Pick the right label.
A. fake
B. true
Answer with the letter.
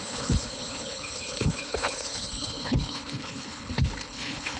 A